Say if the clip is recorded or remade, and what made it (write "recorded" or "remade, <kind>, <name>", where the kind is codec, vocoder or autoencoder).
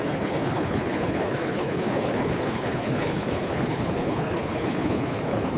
remade, codec, HILCodec